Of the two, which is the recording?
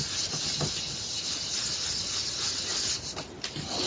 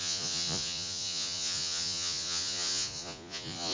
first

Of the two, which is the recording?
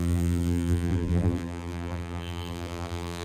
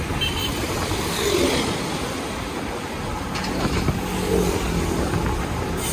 second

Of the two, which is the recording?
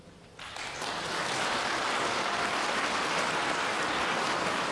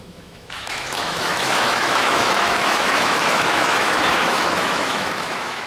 first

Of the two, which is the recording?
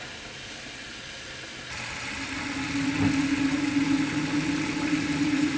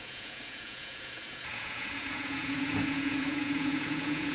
first